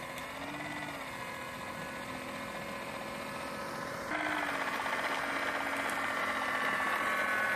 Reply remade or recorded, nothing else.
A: recorded